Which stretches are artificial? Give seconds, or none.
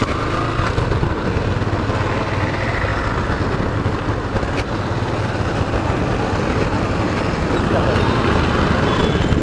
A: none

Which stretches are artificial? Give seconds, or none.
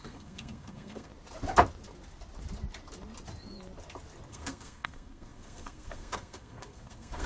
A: 0.0-1.1 (codec, SNAC); 4.3-7.3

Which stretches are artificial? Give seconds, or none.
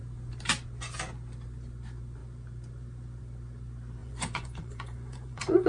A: 4.0-5.7 (vocoder, Vocos)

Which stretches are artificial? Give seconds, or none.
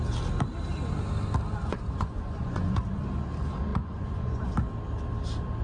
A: 1.6-3.0 (vocoder, Vocos); 3.7-4.5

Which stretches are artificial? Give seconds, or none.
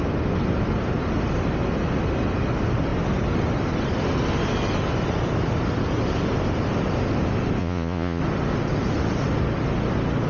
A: 7.6-8.2 (vocoder, Vocos)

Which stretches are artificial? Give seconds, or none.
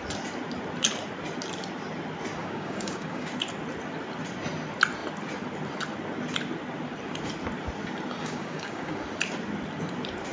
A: 2.4-3.3 (codec, DAC); 8.2-9.0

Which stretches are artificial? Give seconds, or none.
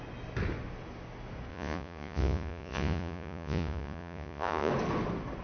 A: 1.5-4.7 (vocoder, Vocos)